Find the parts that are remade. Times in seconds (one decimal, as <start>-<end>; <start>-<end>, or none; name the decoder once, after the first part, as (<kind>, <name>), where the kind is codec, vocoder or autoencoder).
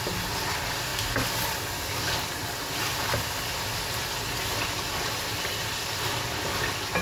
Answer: none